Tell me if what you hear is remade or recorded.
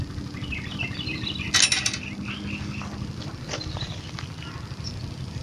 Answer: recorded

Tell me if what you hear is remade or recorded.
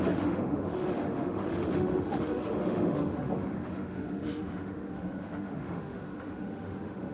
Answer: remade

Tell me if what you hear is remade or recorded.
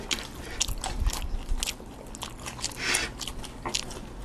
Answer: recorded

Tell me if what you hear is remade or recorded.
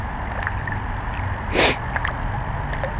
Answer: recorded